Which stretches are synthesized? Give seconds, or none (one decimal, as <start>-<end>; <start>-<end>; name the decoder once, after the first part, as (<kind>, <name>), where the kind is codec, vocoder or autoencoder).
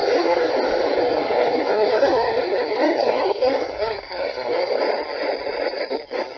0.0-0.5 (codec, SNAC); 1.0-4.8